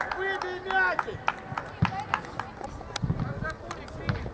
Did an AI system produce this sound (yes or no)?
no